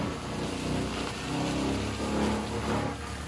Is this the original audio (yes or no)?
yes